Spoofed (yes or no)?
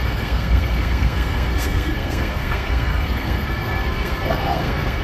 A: yes